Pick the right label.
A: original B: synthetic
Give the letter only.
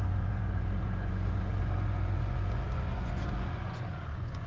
B